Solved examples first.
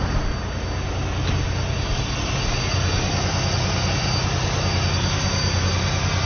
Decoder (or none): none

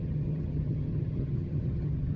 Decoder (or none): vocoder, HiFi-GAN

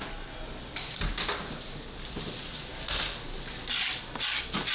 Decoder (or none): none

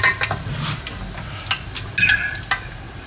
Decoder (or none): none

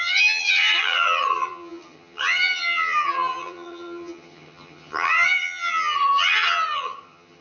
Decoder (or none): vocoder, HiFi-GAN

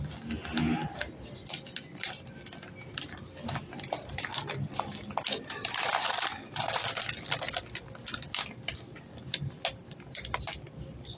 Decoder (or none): none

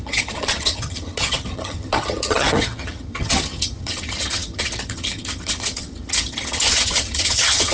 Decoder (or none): vocoder, HiFi-GAN